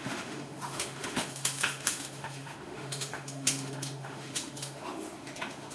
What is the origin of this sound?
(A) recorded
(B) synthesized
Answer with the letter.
B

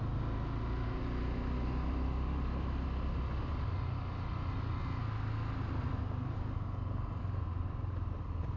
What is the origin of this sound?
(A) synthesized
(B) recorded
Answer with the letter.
B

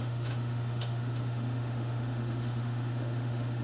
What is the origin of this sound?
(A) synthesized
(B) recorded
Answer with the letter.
A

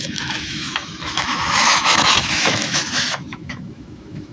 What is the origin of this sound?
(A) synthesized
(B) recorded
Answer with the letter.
A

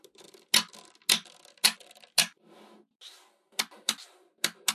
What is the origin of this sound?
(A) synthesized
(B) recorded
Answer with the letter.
B